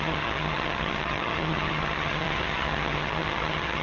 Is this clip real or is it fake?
fake